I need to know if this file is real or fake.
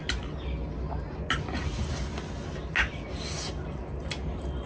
real